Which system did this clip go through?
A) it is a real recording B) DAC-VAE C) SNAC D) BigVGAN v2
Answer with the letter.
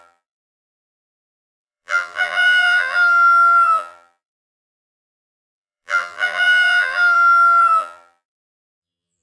D